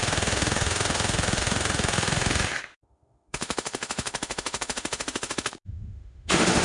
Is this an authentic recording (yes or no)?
no